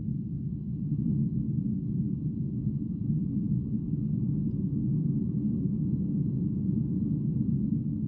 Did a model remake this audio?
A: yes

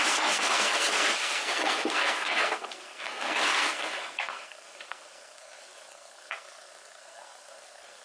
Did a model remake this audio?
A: yes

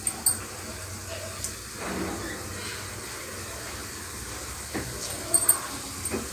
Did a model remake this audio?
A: no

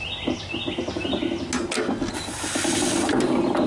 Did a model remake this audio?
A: no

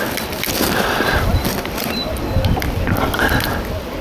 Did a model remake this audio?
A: yes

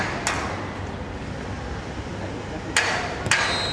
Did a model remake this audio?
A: no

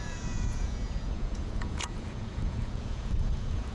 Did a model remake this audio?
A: yes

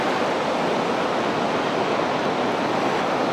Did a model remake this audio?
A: no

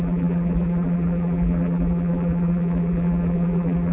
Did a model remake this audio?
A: yes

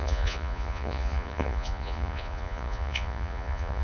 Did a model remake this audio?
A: yes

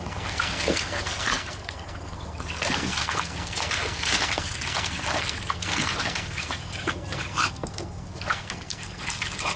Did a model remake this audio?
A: yes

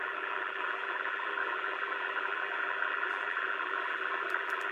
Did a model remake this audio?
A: yes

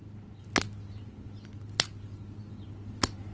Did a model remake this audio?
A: no